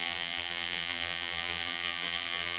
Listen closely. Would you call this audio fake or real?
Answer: fake